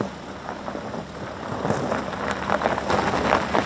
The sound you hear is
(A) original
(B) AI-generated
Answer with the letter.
A